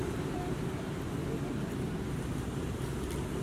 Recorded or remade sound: recorded